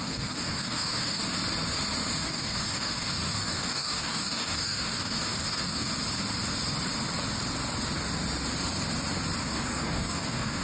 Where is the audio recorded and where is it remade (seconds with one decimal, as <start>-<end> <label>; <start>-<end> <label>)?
0.0-1.2 remade; 1.2-2.2 recorded; 2.2-5.9 remade; 5.9-9.4 recorded; 9.4-10.6 remade